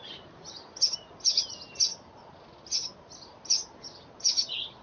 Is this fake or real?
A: real